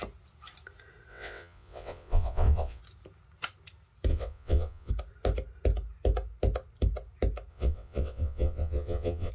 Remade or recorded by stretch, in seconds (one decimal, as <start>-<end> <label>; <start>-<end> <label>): 0.0-1.1 recorded; 1.1-2.8 remade; 2.8-4.1 recorded; 4.1-4.9 remade; 4.9-7.5 recorded; 7.5-9.3 remade

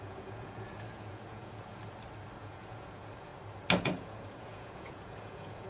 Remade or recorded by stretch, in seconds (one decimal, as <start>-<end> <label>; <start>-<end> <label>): 0.0-1.8 remade; 1.8-2.4 recorded; 2.4-3.3 remade; 3.3-3.8 recorded; 3.8-5.7 remade

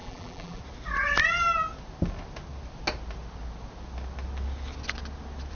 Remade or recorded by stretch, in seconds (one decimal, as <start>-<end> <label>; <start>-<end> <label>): 0.0-0.6 remade; 0.6-5.5 recorded

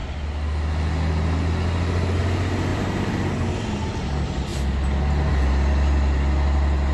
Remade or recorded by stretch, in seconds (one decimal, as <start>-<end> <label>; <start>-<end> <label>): 0.0-2.7 recorded; 2.7-3.7 remade; 3.7-6.9 recorded

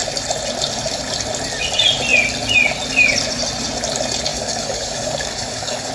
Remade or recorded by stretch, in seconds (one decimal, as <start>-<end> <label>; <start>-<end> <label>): 0.0-4.3 recorded; 4.3-5.9 remade

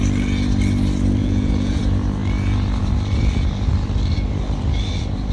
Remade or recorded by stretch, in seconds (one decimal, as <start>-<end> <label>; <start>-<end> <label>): 0.0-1.2 recorded; 1.2-1.8 remade; 1.8-5.3 recorded

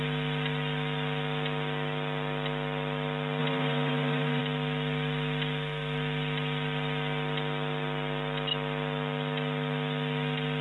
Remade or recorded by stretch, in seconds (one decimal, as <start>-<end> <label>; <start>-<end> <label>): 0.0-3.4 recorded; 3.4-4.4 remade; 4.4-10.6 recorded